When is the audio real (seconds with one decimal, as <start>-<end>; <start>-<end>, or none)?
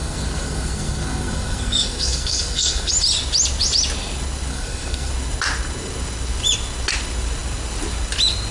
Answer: 2.9-4.5; 5.1-8.5